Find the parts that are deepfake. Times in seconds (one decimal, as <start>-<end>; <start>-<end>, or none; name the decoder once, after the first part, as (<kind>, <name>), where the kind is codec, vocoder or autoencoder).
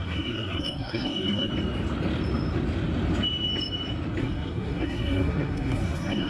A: 0.0-1.5 (codec, SNAC); 4.2-6.3